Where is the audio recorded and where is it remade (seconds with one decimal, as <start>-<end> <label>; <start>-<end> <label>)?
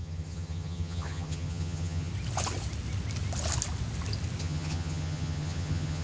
0.0-2.1 remade; 2.1-4.4 recorded; 4.4-6.0 remade